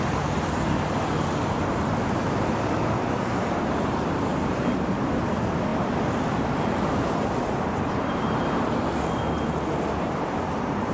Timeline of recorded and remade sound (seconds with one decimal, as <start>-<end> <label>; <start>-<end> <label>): 0.0-4.3 recorded; 4.3-5.1 remade; 5.1-5.7 recorded; 5.7-8.6 remade; 8.6-10.9 recorded